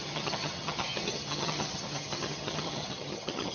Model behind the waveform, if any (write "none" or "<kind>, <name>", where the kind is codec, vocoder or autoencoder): vocoder, HiFi-GAN